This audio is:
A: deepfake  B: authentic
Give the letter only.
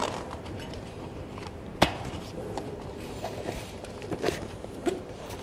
A